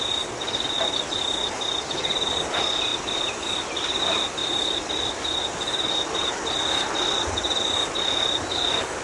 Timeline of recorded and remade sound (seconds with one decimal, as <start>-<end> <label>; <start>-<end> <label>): 0.0-2.9 recorded; 2.9-4.0 remade; 4.0-4.4 recorded; 4.4-5.4 remade; 5.4-9.0 recorded